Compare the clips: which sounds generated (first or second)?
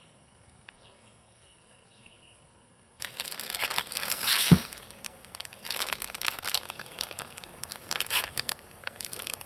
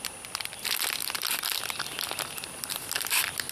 first